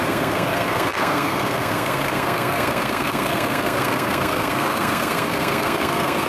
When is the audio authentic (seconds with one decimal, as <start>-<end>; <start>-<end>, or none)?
none